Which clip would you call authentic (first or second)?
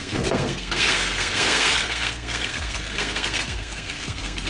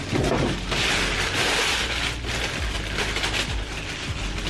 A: second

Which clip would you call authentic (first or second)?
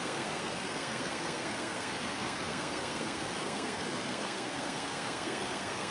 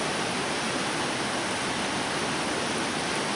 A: second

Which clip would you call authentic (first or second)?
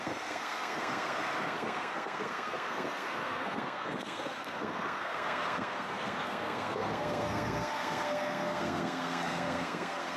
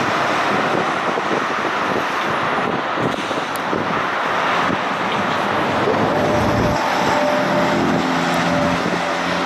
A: second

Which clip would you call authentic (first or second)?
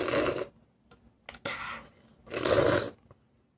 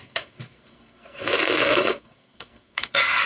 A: first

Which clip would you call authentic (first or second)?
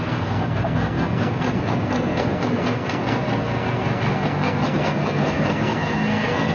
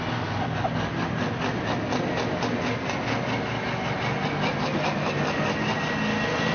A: second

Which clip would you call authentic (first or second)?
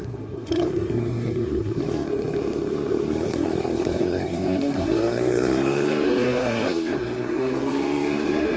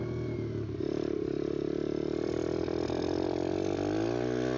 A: second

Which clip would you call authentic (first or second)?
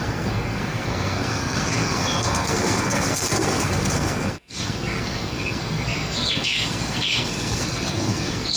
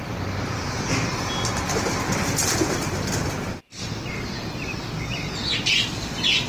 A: second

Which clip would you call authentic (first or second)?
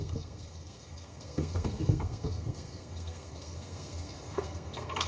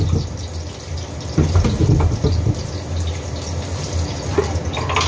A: second